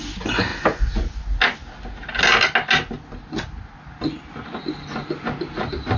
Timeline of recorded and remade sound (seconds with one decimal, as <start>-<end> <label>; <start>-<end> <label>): 0.0-6.0 recorded